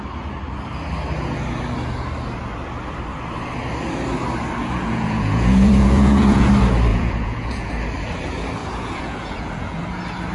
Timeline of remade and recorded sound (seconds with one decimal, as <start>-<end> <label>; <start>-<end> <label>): 0.0-4.6 recorded; 4.6-6.5 remade; 6.5-6.9 recorded; 6.9-7.7 remade; 7.7-8.6 recorded; 8.6-9.8 remade; 9.8-10.3 recorded